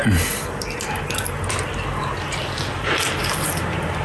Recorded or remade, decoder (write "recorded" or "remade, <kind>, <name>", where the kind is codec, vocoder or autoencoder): recorded